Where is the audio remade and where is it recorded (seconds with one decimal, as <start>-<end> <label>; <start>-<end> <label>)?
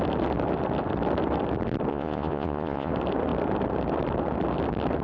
0.0-1.9 recorded; 1.9-2.9 remade; 2.9-5.0 recorded